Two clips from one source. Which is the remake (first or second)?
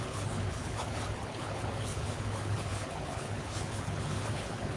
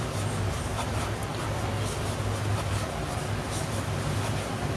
first